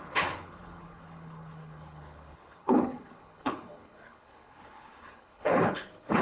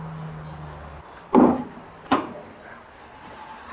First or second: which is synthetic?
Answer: first